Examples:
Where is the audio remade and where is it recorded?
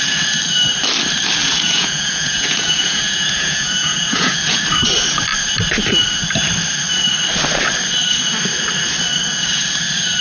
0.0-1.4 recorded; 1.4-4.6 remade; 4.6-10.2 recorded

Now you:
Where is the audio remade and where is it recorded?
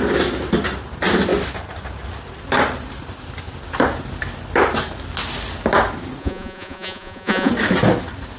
0.0-6.2 recorded; 6.2-7.5 remade; 7.5-8.4 recorded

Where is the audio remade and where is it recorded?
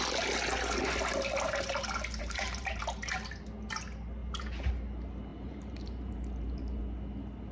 0.0-2.2 recorded; 2.2-2.8 remade; 2.8-4.2 recorded; 4.2-4.7 remade; 4.7-5.3 recorded; 5.3-6.8 remade; 6.8-7.5 recorded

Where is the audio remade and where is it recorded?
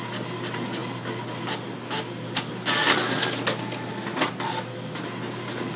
0.0-5.8 recorded